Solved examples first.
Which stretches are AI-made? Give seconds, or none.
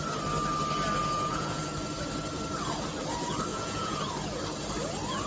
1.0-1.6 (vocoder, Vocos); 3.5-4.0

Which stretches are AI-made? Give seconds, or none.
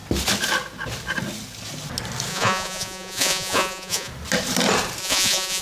2.3-4.1 (vocoder, Vocos); 5.0-5.6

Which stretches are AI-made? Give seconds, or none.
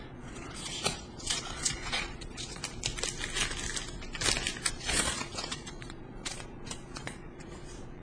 0.0-2.6 (vocoder, Vocos); 4.7-8.0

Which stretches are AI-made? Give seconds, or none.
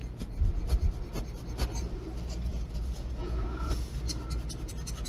2.5-3.7 (vocoder, Vocos)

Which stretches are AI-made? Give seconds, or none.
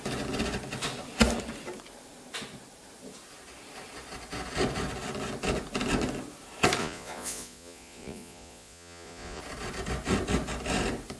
6.8-9.4 (vocoder, Vocos)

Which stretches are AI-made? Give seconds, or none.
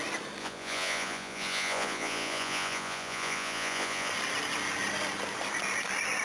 0.4-4.1 (vocoder, Vocos)